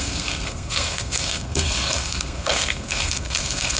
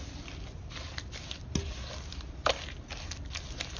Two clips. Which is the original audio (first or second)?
second